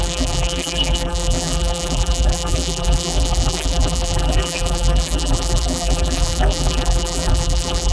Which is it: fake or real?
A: fake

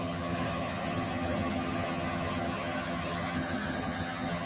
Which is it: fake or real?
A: fake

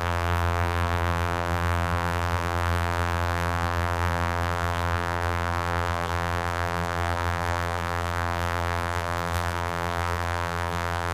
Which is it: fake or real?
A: fake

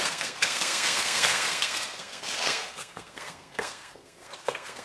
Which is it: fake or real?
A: fake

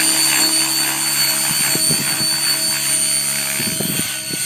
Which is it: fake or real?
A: real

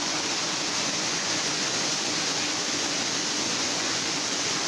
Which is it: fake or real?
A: fake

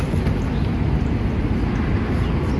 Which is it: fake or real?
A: real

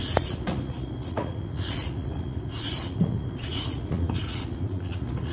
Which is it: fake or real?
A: fake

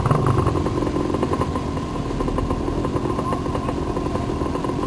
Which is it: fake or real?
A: real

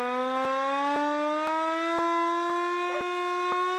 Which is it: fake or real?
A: real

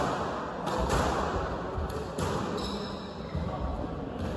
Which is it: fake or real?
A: real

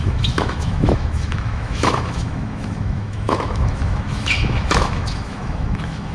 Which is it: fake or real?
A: fake